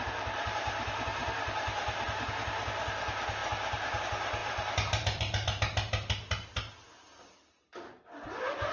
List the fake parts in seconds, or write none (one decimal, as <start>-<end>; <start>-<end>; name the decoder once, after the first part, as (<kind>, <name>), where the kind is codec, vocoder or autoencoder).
1.2-2.3 (vocoder, BigVGAN v2); 4.4-8.7